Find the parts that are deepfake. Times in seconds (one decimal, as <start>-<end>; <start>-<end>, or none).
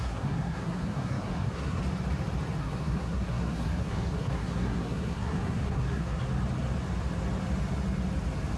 0.0-1.8; 2.6-6.2